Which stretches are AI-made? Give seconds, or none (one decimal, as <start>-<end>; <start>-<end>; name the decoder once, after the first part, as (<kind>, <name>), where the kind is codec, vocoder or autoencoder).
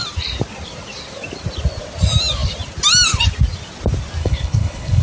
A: 4.2-5.0 (codec, HILCodec)